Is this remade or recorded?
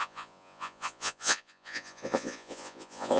remade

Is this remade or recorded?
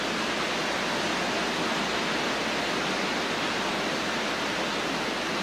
recorded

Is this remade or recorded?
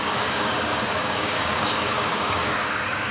remade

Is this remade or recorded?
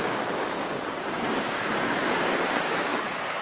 remade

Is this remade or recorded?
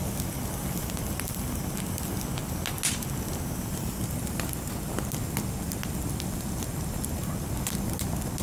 recorded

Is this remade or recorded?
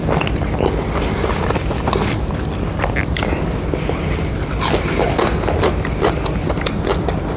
recorded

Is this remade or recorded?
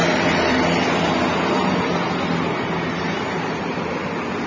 recorded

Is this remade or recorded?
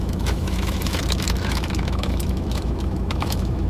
remade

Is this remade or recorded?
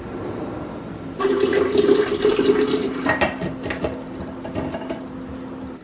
recorded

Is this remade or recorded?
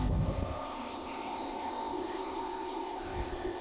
remade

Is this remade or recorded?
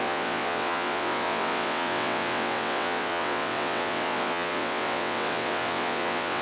remade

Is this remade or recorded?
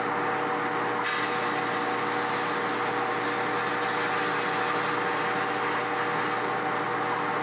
recorded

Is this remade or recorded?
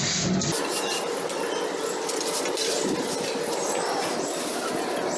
recorded